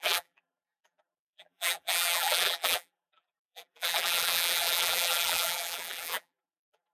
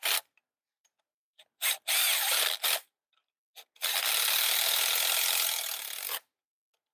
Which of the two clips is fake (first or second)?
first